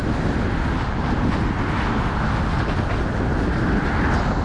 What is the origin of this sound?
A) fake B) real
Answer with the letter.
B